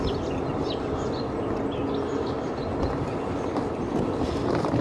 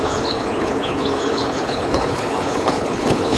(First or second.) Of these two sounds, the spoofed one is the second